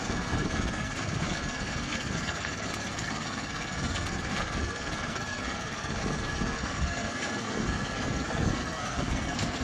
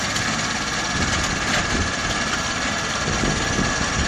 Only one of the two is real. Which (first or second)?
second